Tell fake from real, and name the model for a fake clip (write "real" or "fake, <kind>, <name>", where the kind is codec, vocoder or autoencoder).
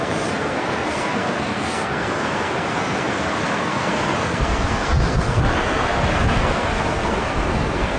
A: fake, codec, SNAC